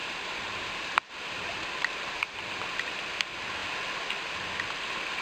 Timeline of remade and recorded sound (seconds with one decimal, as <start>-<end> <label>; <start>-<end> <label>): 0.0-3.0 remade; 3.0-5.2 recorded